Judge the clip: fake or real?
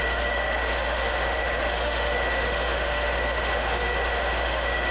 fake